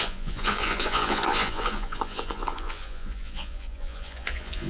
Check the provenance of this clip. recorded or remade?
remade